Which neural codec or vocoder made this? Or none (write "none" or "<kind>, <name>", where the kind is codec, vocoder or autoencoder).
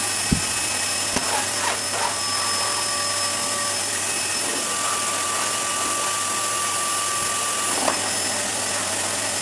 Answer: none